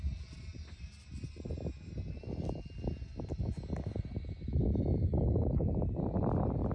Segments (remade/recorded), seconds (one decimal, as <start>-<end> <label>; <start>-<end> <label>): 0.0-6.7 recorded